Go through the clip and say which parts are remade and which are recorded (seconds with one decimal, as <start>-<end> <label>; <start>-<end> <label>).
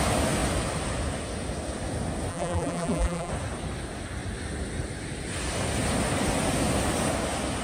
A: 0.0-2.3 recorded; 2.3-3.3 remade; 3.3-7.6 recorded